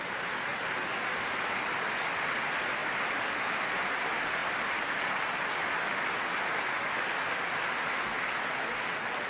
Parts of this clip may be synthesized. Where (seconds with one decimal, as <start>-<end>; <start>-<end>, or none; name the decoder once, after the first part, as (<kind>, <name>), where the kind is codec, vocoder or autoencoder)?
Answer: 2.8-3.5 (vocoder, BigVGAN v2)